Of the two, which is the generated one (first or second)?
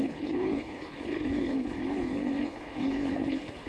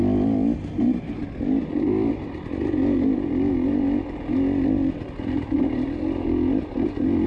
first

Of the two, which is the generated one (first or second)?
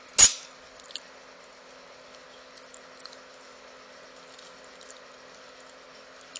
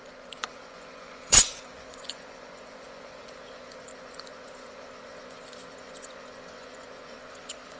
second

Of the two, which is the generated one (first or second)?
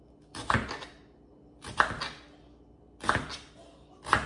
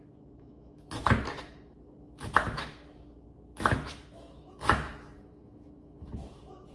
second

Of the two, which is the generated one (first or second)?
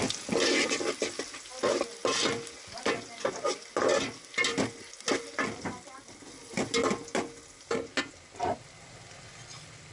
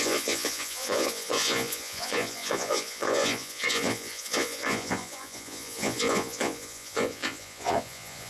second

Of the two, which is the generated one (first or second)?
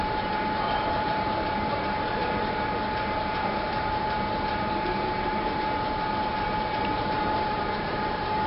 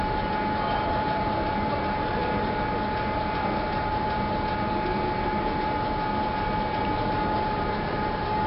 first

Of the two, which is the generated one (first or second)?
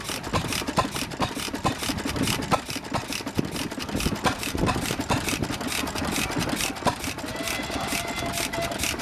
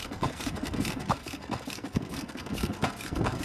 second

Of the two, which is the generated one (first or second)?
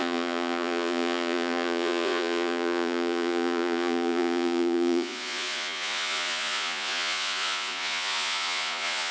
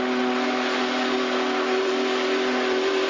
first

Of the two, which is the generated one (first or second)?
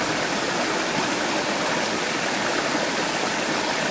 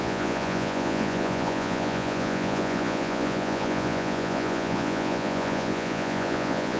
second